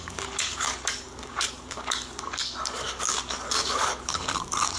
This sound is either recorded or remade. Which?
remade